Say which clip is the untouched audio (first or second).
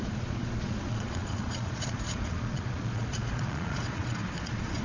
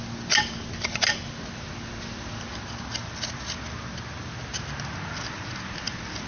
second